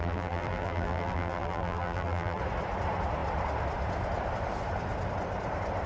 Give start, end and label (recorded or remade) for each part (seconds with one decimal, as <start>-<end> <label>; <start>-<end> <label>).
0.0-2.4 remade; 2.4-5.9 recorded